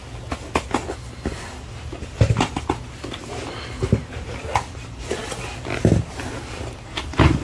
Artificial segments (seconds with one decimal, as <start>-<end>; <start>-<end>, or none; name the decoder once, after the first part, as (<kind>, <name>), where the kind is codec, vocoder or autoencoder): none